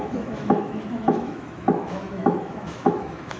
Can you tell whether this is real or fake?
fake